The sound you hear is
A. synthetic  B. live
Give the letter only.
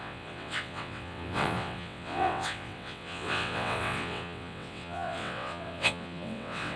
A